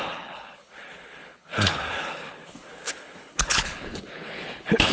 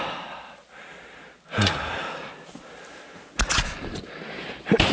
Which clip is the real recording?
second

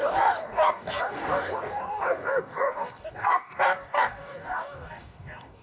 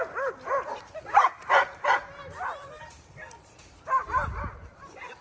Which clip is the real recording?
second